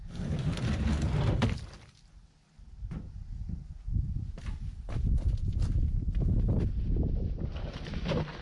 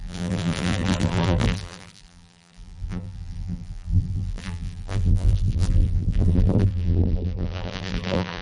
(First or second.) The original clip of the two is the first